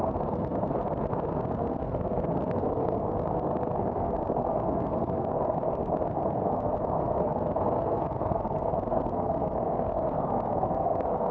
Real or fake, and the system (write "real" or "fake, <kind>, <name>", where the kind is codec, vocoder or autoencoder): fake, codec, SNAC